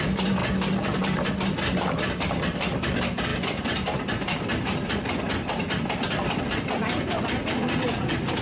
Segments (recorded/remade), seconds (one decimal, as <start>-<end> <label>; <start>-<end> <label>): 0.0-8.4 recorded